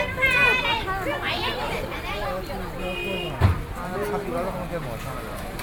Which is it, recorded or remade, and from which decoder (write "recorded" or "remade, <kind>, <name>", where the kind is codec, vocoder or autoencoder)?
recorded